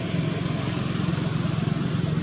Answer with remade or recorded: recorded